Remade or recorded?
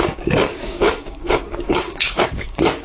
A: remade